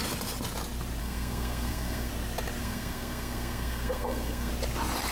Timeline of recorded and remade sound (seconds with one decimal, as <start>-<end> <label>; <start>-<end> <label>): 0.0-1.0 recorded; 1.0-2.1 remade; 2.1-2.6 recorded; 2.6-4.5 remade; 4.5-5.1 recorded